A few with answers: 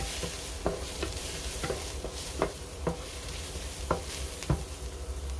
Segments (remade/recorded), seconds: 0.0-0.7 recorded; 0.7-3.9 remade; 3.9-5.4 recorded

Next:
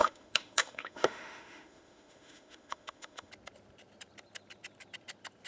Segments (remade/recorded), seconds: 0.0-3.3 remade; 3.3-5.5 recorded

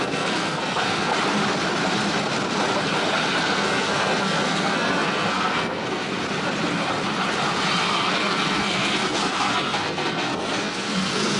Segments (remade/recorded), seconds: 0.0-1.1 remade; 1.1-3.4 recorded; 3.4-6.1 remade; 6.1-7.8 recorded; 7.8-11.4 remade

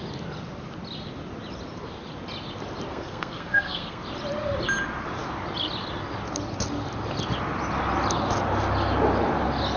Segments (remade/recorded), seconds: 0.0-2.9 recorded; 2.9-4.0 remade; 4.0-9.8 recorded